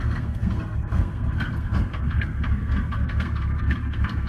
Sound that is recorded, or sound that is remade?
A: remade